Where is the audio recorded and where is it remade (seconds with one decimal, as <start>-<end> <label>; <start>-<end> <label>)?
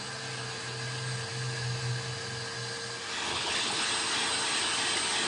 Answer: 0.0-3.3 recorded; 3.3-3.9 remade; 3.9-5.3 recorded